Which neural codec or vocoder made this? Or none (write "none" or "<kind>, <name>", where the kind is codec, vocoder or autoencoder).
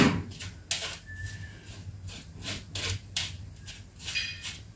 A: none